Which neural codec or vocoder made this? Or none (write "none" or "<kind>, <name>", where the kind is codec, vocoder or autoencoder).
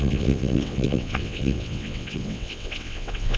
vocoder, WaveNeXt